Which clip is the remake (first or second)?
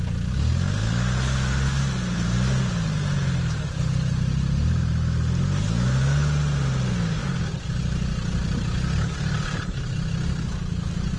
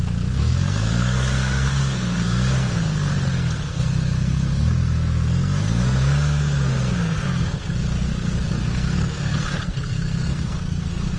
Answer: second